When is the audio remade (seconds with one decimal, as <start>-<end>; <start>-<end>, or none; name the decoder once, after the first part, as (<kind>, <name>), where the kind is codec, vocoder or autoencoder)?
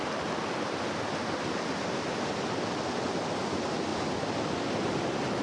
none